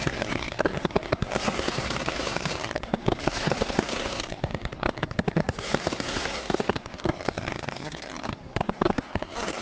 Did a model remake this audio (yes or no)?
yes